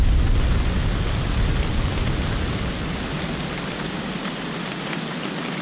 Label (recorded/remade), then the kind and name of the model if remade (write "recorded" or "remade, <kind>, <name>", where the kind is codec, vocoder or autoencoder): recorded